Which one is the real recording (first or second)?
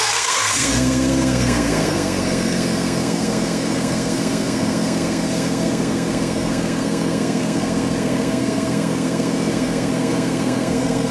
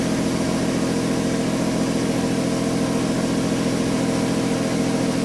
second